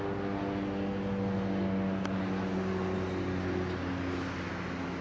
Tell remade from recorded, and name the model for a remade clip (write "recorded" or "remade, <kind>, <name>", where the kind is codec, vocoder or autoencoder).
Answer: recorded